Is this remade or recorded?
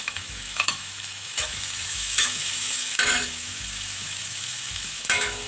remade